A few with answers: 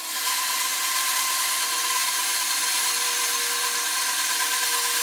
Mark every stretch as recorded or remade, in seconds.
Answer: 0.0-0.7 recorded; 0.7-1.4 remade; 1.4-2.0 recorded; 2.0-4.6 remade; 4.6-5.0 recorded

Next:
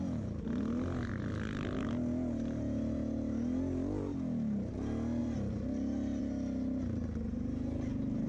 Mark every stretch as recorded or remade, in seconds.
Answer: 0.0-5.2 recorded; 5.2-6.2 remade; 6.2-8.3 recorded

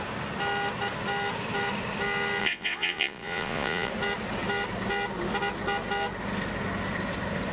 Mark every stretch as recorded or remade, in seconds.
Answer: 0.0-2.4 recorded; 2.4-3.9 remade; 3.9-7.5 recorded

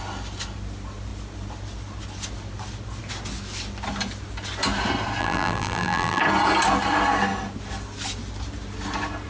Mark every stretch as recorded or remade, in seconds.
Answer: 0.0-5.2 recorded; 5.2-6.2 remade; 6.2-9.3 recorded